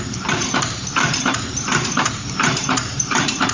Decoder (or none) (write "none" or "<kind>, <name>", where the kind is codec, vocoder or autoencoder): vocoder, BigVGAN v2